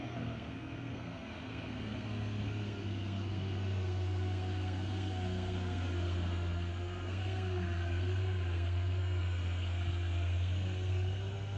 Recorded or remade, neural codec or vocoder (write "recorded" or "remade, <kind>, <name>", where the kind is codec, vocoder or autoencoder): remade, codec, SNAC